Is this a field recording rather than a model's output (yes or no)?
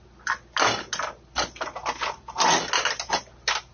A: yes